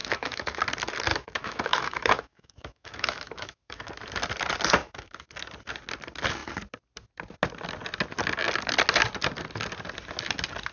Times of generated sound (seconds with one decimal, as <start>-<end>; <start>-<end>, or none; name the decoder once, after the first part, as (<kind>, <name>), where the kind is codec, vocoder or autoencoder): 0.0-0.6 (autoencoder, DAC-VAE); 1.1-3.9; 4.8-5.3